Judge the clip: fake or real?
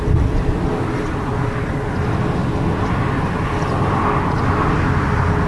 real